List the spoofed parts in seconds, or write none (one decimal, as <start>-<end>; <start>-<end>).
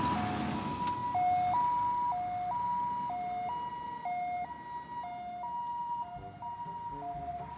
none